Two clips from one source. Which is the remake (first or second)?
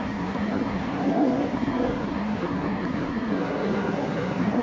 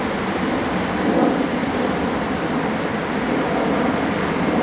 first